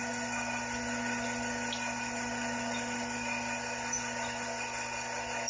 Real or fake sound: real